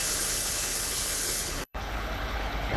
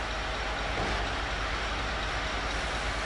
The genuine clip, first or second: second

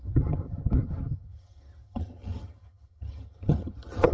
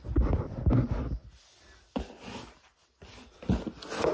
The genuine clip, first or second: second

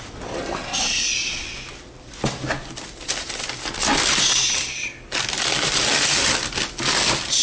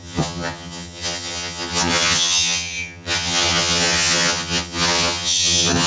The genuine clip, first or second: first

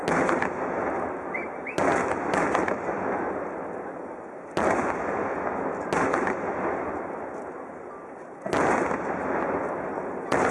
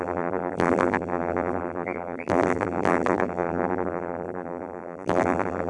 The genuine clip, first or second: first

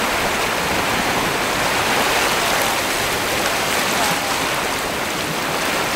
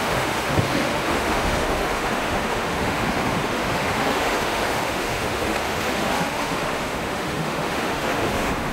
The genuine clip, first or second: first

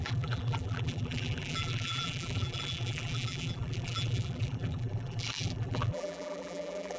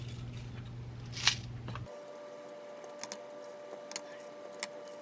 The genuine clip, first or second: second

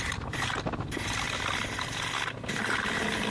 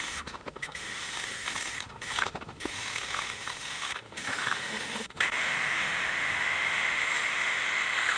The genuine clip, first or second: first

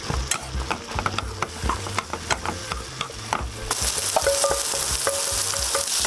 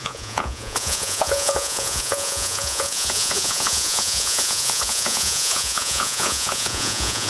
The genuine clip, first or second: first